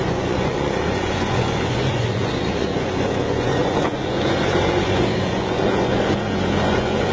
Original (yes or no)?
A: no